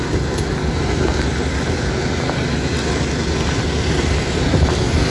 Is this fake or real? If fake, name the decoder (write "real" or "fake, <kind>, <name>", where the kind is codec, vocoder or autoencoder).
real